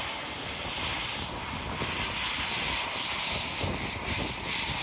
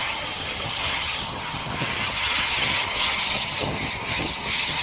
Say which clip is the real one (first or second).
first